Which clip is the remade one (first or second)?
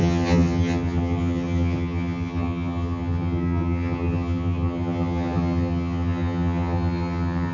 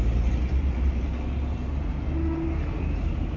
first